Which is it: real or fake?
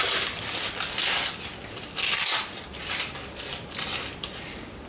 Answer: fake